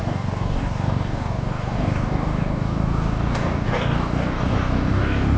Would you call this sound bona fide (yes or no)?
no